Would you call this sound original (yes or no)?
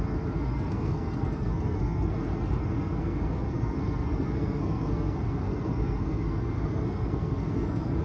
no